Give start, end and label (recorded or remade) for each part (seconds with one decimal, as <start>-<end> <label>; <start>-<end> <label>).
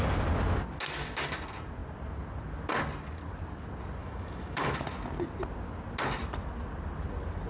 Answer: 0.0-4.0 recorded; 4.0-4.8 remade; 4.8-7.5 recorded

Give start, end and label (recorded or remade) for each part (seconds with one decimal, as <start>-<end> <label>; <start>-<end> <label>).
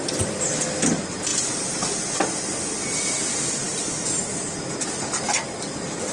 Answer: 0.0-6.1 recorded